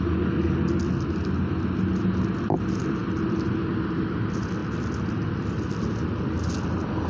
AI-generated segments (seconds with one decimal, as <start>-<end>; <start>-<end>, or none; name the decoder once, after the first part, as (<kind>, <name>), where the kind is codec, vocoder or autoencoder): none